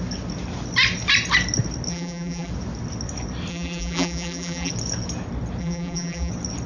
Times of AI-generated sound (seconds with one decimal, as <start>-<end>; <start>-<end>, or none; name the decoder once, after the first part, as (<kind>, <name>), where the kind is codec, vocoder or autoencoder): 1.9-2.5 (vocoder, BigVGAN v2); 3.5-4.7; 5.6-6.3